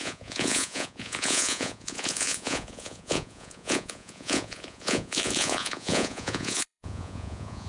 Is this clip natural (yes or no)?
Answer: no